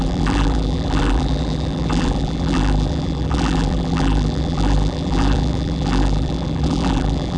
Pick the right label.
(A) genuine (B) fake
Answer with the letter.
B